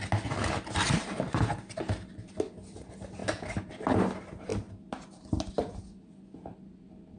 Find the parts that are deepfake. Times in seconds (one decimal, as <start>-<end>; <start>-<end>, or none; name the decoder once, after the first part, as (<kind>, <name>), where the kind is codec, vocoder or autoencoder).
none